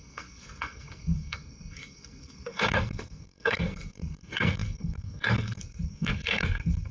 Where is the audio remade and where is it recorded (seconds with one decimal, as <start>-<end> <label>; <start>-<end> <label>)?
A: 0.0-6.9 remade